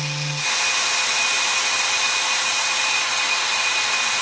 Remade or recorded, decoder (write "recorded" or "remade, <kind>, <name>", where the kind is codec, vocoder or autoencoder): recorded